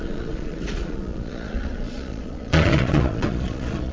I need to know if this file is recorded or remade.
remade